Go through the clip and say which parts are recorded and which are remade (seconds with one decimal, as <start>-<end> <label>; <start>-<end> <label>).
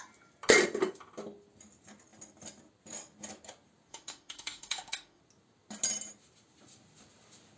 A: 0.0-3.9 recorded; 3.9-5.2 remade; 5.2-7.6 recorded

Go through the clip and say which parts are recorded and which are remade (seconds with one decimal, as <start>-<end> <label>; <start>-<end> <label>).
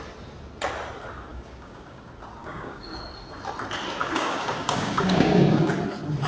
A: 0.0-1.3 recorded; 1.3-2.0 remade; 2.0-2.4 recorded; 2.4-3.0 remade; 3.0-4.0 recorded; 4.0-5.7 remade; 5.7-6.3 recorded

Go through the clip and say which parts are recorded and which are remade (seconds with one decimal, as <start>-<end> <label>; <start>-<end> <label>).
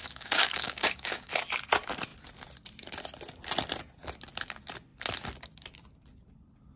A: 0.0-1.3 remade; 1.3-6.8 recorded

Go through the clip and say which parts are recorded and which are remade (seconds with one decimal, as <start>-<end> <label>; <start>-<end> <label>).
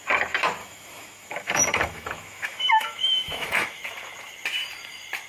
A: 0.0-0.6 recorded; 0.6-3.8 remade; 3.8-5.3 recorded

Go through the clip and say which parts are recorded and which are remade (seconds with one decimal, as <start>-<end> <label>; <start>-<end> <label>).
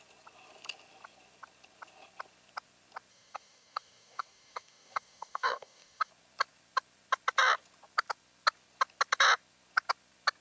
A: 0.0-3.1 recorded; 3.1-6.1 remade; 6.1-10.4 recorded